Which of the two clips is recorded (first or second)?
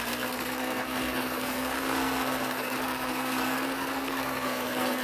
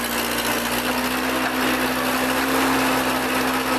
second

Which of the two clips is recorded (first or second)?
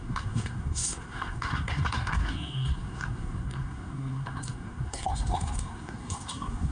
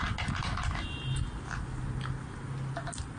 second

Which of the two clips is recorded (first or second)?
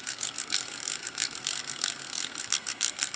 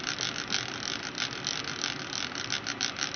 second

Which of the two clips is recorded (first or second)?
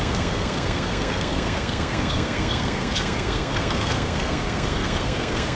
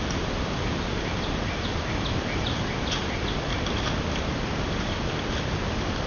second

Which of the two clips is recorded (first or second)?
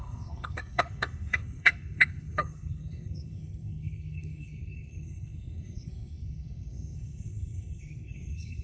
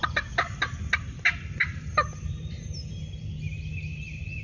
second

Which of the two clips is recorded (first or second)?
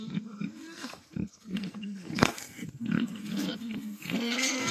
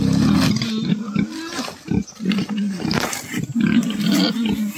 second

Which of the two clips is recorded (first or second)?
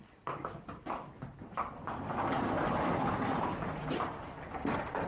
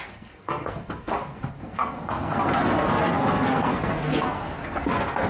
first